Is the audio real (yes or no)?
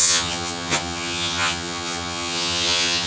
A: no